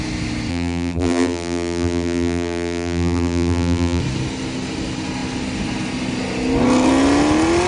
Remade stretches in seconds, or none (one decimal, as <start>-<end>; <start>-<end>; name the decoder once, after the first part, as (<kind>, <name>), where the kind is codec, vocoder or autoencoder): 0.5-4.0 (vocoder, BigVGAN v2)